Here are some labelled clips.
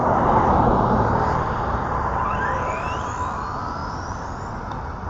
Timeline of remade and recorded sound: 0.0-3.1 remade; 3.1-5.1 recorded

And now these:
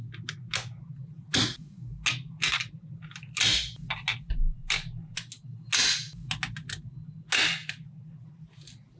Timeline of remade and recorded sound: 0.0-9.0 recorded

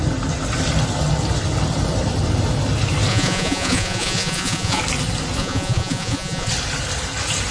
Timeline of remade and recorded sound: 0.0-3.1 recorded; 3.1-4.8 remade; 4.8-5.4 recorded; 5.4-6.5 remade; 6.5-7.5 recorded